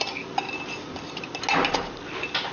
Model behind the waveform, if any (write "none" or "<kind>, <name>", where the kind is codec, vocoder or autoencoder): none